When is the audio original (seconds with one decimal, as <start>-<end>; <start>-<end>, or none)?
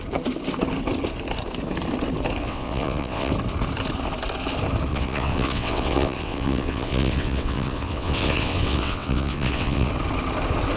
0.0-2.4; 3.3-4.9; 9.9-10.8